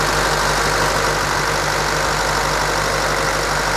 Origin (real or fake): real